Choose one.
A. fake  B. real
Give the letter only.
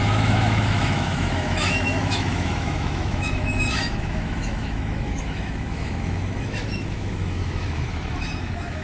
A